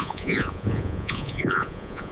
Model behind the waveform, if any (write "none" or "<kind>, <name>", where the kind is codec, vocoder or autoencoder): vocoder, Vocos